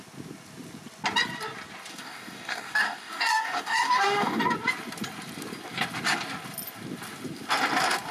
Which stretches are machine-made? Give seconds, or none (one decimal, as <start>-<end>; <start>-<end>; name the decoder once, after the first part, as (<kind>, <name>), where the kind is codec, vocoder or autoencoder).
1.9-4.4 (codec, DAC)